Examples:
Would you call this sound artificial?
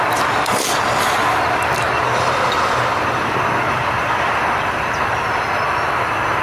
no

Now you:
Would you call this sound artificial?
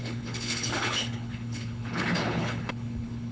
yes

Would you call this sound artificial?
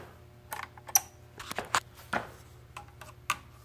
no